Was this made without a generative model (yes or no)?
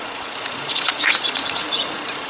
no